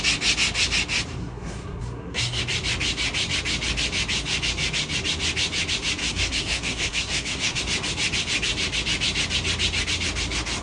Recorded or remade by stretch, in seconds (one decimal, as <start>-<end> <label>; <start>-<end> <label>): 0.0-1.2 recorded; 1.2-2.4 remade; 2.4-6.0 recorded; 6.0-7.6 remade; 7.6-10.6 recorded